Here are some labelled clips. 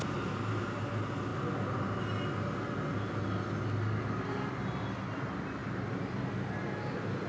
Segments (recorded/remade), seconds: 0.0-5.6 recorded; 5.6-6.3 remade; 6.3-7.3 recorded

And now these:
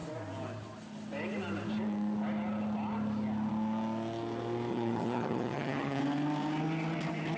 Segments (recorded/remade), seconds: 0.0-4.7 recorded; 4.7-6.0 remade; 6.0-7.4 recorded